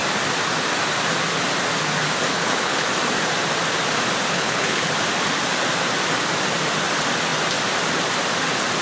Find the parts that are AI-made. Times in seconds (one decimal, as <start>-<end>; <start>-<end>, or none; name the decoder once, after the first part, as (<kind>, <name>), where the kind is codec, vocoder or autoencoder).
2.3-2.9 (codec, HILCodec); 4.3-4.9